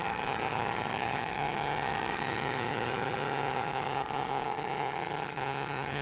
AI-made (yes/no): yes